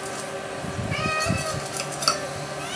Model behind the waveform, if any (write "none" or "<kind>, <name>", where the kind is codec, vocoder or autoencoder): none